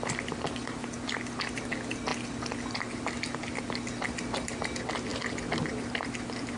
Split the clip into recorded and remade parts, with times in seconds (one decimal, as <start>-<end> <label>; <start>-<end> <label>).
0.0-6.6 recorded